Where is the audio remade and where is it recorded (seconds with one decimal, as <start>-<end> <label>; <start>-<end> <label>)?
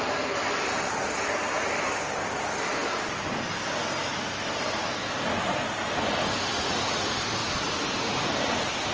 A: 0.0-6.5 recorded; 6.5-7.0 remade; 7.0-7.4 recorded; 7.4-7.9 remade; 7.9-8.9 recorded